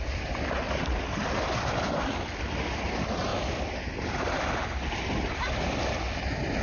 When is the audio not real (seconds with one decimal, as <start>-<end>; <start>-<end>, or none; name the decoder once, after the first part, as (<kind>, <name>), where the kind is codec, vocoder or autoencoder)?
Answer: none